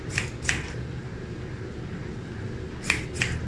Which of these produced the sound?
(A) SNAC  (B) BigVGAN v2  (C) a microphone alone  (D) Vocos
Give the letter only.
C